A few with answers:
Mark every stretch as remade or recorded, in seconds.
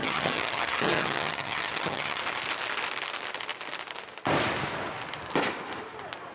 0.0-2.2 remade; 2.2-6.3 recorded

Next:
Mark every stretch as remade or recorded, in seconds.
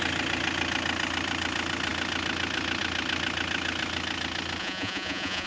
0.0-4.6 recorded; 4.6-5.5 remade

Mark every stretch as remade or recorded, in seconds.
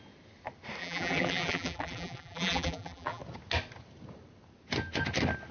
0.0-0.8 recorded; 0.8-3.2 remade; 3.2-5.5 recorded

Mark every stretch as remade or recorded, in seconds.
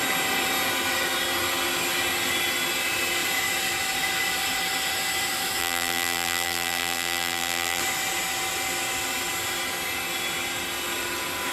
0.0-5.6 recorded; 5.6-7.8 remade; 7.8-11.5 recorded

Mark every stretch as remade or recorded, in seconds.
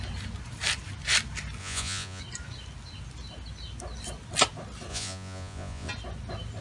0.0-1.6 recorded; 1.6-2.2 remade; 2.2-4.9 recorded; 4.9-5.9 remade; 5.9-6.6 recorded